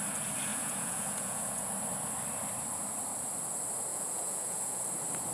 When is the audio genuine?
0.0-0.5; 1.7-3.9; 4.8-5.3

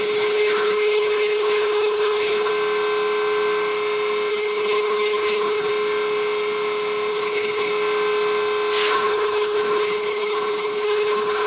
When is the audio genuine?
2.5-4.3; 5.7-7.1; 7.7-8.9

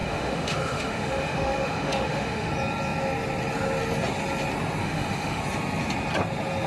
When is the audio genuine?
2.5-4.8; 5.4-6.7

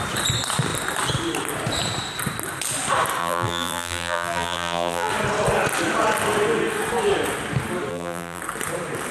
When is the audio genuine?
0.0-3.2; 5.1-7.9; 8.4-9.1